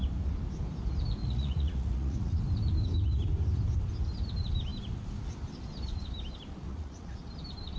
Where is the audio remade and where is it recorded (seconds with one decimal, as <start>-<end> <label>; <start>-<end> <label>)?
0.0-1.2 recorded; 1.2-2.4 remade; 2.4-6.7 recorded; 6.7-7.3 remade; 7.3-7.8 recorded